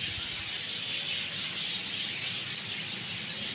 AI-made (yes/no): no